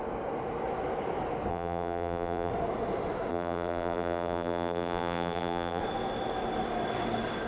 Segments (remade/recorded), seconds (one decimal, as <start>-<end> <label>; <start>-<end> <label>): 0.0-1.5 recorded; 1.5-2.5 remade; 2.5-3.3 recorded; 3.3-5.8 remade; 5.8-7.5 recorded